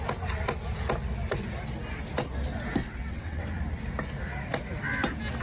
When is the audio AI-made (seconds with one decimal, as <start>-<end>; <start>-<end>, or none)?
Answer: 2.8-3.4